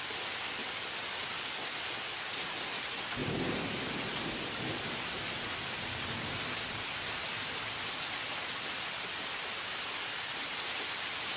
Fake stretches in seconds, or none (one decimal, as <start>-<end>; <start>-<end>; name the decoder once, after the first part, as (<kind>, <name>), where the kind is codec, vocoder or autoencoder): none